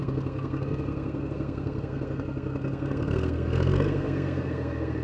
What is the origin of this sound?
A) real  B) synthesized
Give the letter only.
B